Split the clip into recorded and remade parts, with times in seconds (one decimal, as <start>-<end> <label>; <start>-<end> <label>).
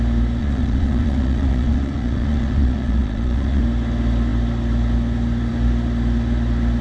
0.0-0.4 recorded; 0.4-3.6 remade; 3.6-6.8 recorded